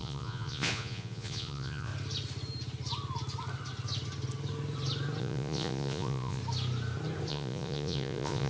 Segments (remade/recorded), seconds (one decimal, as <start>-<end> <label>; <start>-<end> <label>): 0.0-1.9 remade; 1.9-5.2 recorded; 5.2-6.4 remade; 6.4-7.3 recorded; 7.3-8.5 remade